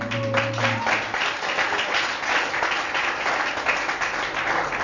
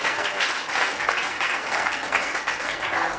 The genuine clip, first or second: first